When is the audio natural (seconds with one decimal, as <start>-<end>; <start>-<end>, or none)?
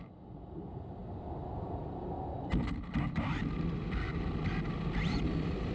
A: 0.0-5.7